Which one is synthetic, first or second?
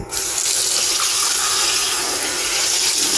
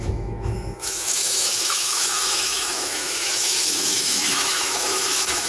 second